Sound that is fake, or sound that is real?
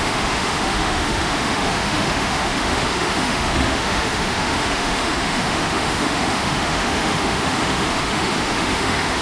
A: fake